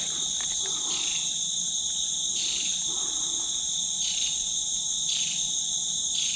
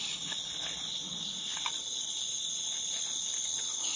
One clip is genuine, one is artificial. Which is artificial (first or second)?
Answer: second